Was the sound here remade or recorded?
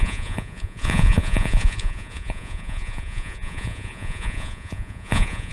remade